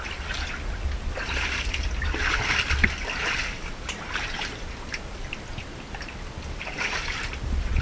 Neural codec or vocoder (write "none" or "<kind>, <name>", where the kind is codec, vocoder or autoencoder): none